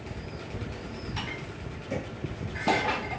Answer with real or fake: real